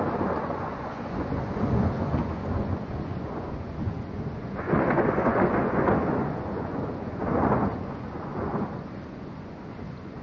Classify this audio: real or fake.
fake